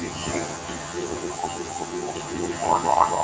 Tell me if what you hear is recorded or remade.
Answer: remade